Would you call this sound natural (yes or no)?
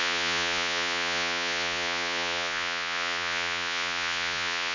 no